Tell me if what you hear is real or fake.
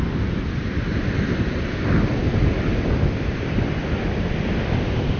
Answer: real